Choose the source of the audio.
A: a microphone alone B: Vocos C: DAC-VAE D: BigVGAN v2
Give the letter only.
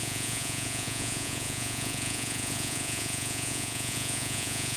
B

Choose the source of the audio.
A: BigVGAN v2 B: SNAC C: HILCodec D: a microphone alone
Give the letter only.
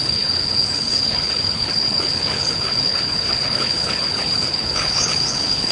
C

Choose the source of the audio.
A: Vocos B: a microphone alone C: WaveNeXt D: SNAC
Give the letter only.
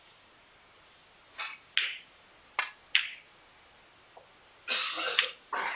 B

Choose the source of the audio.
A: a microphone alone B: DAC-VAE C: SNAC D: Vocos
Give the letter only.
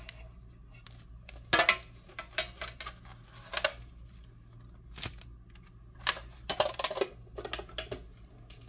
A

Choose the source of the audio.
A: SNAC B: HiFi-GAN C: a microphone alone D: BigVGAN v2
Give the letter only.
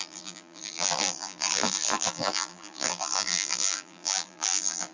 D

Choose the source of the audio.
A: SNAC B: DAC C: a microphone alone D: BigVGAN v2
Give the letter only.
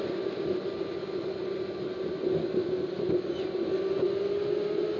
C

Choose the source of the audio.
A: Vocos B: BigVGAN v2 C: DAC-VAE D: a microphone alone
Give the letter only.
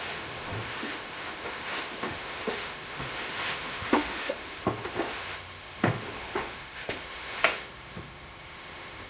C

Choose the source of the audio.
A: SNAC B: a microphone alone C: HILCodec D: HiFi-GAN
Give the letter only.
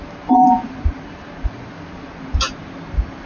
B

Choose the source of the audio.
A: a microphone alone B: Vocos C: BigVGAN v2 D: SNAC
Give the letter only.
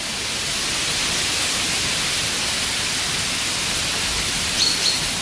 A